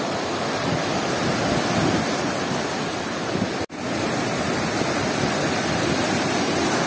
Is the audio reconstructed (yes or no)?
no